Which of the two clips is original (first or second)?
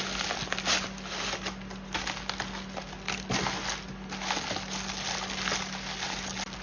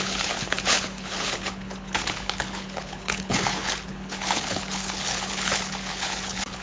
first